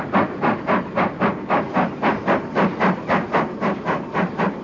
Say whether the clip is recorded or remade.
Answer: recorded